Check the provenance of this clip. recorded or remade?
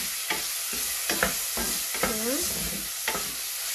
recorded